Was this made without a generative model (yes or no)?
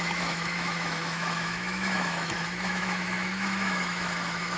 no